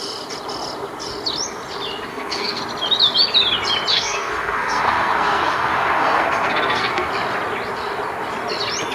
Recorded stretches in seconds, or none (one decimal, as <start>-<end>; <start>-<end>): 0.0-2.1; 2.6-3.9; 7.1-8.9